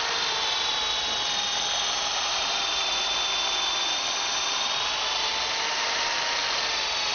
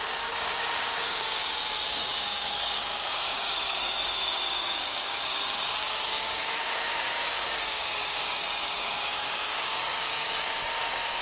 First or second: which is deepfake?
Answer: second